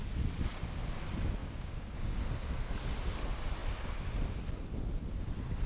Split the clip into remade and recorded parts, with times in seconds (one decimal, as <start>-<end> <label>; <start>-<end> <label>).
0.0-1.4 recorded; 1.4-2.2 remade; 2.2-5.7 recorded